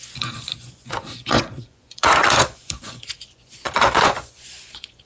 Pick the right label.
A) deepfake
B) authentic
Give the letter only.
A